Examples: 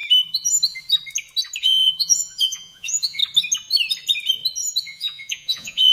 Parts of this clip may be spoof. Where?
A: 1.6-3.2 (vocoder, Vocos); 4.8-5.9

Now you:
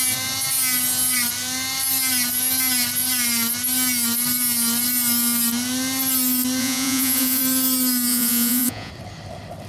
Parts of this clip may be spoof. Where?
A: 6.6-7.4 (vocoder, Vocos); 8.1-8.9

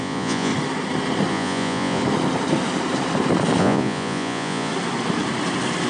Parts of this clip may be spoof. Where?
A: 0.0-0.5 (vocoder, Vocos); 1.3-2.0; 3.6-4.7

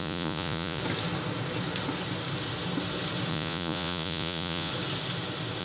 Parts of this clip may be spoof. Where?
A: 0.0-0.8 (vocoder, Vocos); 3.3-4.7